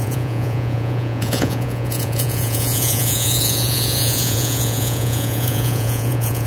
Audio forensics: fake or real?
fake